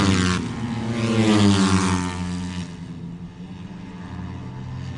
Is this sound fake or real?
real